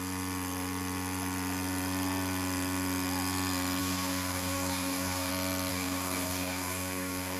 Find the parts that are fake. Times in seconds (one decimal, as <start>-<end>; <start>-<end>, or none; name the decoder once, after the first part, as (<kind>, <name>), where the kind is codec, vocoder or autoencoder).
3.8-5.3 (codec, DAC); 5.7-7.4